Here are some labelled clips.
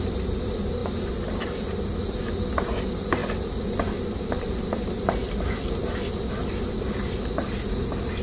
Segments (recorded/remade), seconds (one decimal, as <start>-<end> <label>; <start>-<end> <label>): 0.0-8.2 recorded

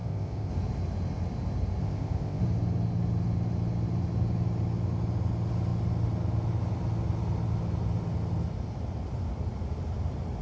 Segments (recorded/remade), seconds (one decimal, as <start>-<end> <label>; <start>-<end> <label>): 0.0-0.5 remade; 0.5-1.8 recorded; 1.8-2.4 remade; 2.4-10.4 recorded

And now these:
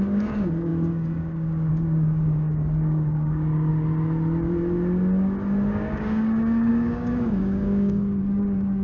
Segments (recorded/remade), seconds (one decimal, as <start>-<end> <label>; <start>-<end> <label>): 0.0-3.7 remade; 3.7-5.7 recorded; 5.7-8.8 remade

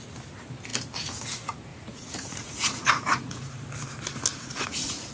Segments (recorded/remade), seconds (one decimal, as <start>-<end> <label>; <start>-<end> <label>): 0.0-1.7 recorded; 1.7-3.6 remade; 3.6-4.3 recorded; 4.3-5.1 remade

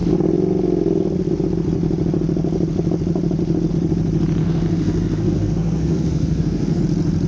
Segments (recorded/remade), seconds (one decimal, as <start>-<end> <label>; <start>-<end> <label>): 0.0-4.4 recorded; 4.4-6.8 remade; 6.8-7.3 recorded

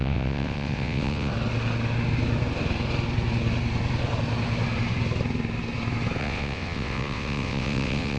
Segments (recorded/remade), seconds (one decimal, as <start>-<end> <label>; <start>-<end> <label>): 0.0-1.3 remade; 1.3-6.2 recorded; 6.2-8.2 remade

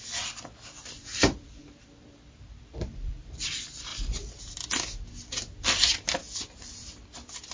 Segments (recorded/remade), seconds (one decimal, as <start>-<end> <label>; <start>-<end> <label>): 0.0-3.9 remade; 3.9-6.5 recorded; 6.5-7.5 remade

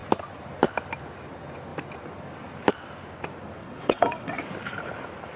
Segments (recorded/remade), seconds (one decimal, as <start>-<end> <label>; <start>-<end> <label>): 0.0-3.6 recorded; 3.6-4.4 remade; 4.4-5.4 recorded